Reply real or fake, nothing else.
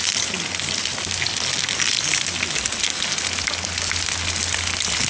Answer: real